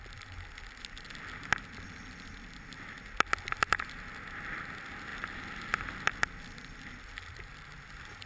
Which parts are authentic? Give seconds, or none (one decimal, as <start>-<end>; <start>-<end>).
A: 0.0-8.3